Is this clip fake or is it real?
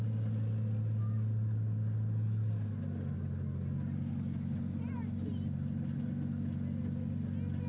real